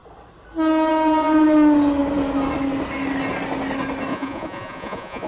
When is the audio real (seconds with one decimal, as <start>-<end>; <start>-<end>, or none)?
0.0-4.1